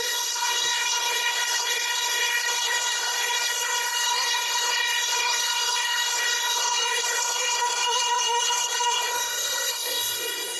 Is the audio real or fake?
fake